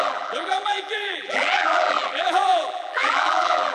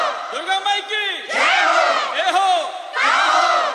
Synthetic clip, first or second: first